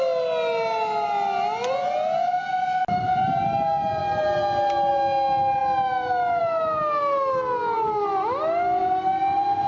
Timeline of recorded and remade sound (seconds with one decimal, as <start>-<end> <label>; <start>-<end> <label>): 0.0-9.7 recorded